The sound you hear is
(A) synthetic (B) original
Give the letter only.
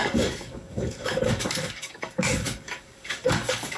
A